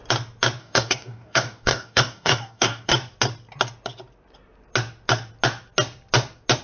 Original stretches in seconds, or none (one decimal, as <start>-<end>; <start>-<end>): 0.0-0.6; 2.9-6.6